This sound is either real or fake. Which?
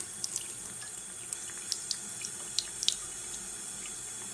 real